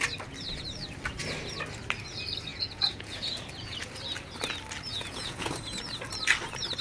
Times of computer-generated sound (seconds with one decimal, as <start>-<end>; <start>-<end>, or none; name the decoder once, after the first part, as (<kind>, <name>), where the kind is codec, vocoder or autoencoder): 2.5-3.4 (vocoder, Vocos); 4.9-5.5